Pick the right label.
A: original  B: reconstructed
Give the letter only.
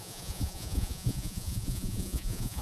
B